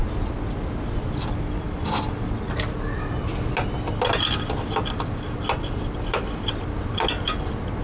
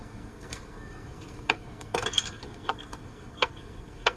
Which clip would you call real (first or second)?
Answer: first